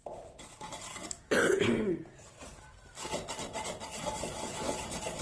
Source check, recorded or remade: recorded